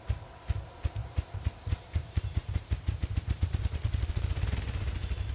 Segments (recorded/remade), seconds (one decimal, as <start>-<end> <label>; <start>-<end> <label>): 0.0-1.0 recorded; 1.0-4.1 remade; 4.1-5.3 recorded